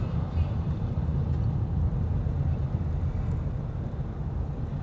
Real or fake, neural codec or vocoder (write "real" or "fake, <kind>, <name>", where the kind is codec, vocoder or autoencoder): real